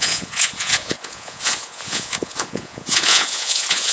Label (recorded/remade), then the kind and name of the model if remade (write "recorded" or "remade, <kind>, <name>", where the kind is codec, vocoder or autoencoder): remade, vocoder, Vocos